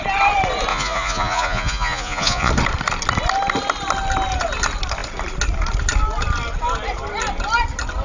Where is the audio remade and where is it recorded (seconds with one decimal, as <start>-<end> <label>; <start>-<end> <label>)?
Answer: 0.0-0.7 recorded; 0.7-2.5 remade; 2.5-8.0 recorded